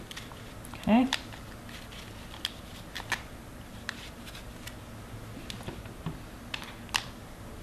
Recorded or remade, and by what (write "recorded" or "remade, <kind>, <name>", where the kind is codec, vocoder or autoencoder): recorded